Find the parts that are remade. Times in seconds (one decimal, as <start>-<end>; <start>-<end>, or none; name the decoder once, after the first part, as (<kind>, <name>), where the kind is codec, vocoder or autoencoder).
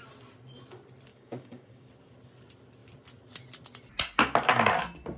1.1-1.9 (codec, DAC)